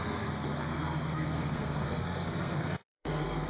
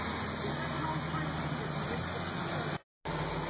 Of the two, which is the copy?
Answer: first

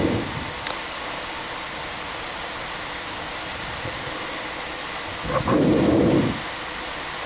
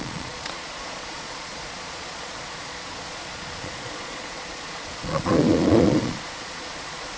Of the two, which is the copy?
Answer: second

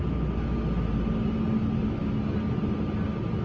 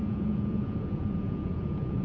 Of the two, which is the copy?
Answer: second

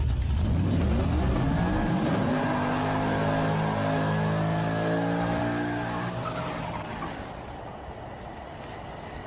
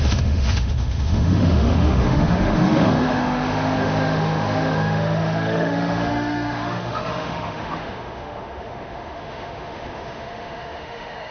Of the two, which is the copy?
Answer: second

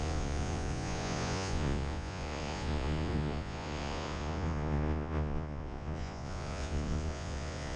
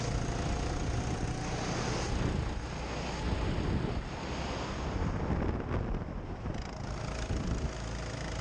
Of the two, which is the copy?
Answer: first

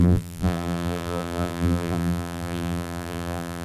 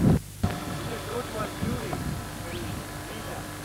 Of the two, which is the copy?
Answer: first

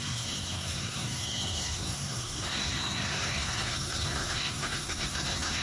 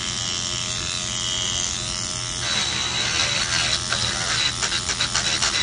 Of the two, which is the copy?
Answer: first